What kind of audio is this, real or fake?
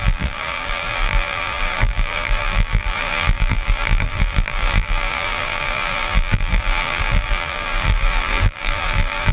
fake